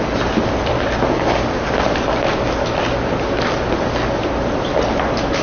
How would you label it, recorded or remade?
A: recorded